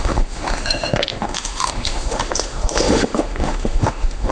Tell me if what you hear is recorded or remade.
remade